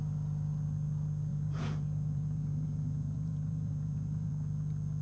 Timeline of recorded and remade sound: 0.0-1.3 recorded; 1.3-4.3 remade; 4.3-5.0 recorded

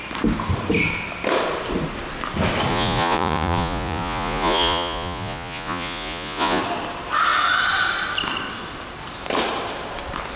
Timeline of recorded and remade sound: 0.0-2.7 recorded; 2.7-6.6 remade; 6.6-10.4 recorded

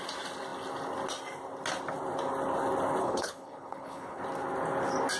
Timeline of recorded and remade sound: 0.0-3.0 recorded; 3.0-4.2 remade; 4.2-5.2 recorded

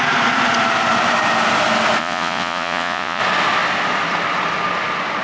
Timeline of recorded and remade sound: 0.0-2.0 recorded; 2.0-3.2 remade; 3.2-5.2 recorded

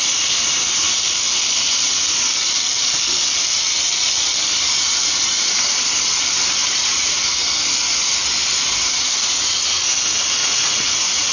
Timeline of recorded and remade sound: 0.0-6.6 recorded; 6.6-7.2 remade; 7.2-10.4 recorded; 10.4-11.3 remade

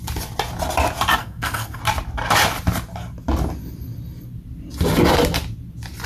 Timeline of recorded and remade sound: 0.0-1.2 recorded; 1.2-1.8 remade; 1.8-6.1 recorded